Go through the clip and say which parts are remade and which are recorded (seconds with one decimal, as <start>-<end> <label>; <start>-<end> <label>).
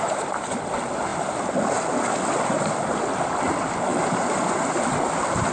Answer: 0.0-5.5 recorded